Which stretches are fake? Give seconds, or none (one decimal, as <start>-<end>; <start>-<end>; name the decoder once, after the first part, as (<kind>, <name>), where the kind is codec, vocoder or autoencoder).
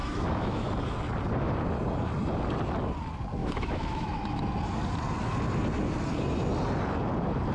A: 0.0-0.7 (autoencoder, DAC-VAE); 3.4-4.4